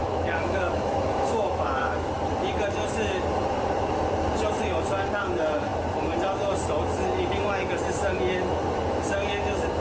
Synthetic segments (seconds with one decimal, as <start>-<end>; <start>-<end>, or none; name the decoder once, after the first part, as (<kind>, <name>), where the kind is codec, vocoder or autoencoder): 0.0-2.1 (autoencoder, DAC-VAE)